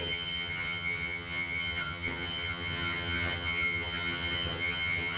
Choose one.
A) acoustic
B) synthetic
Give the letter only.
B